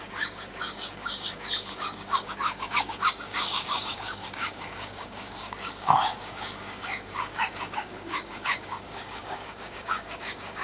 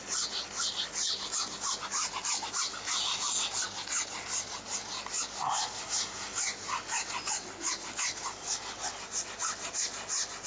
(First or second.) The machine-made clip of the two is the first